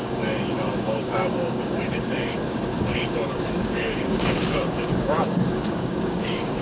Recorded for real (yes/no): no